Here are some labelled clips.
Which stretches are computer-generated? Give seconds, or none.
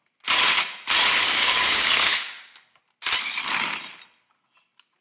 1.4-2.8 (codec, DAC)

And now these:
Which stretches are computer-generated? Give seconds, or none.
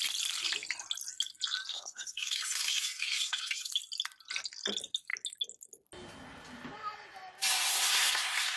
1.7-3.7 (codec, SNAC); 7.7-8.6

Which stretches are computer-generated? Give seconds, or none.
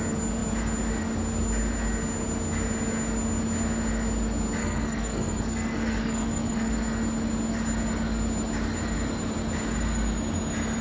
4.6-6.7 (codec, SNAC)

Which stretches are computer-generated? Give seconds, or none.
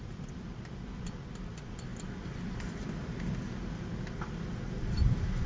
none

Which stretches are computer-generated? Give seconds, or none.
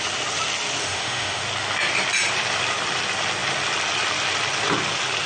0.8-1.4 (autoencoder, DAC-VAE)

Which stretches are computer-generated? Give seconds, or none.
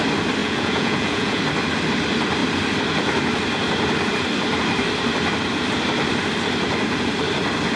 0.4-1.4 (vocoder, Vocos)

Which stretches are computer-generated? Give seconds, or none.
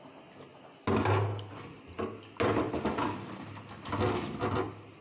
none